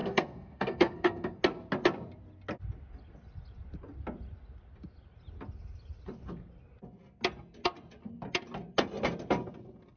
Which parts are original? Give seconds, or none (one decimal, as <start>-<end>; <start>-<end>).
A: 1.4-10.0